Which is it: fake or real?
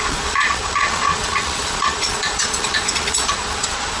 fake